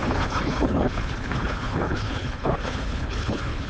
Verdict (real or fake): fake